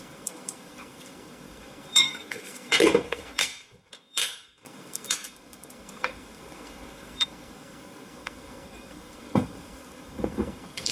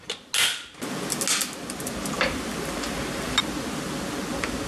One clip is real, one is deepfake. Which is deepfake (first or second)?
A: first